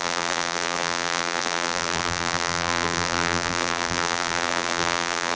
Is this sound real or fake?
fake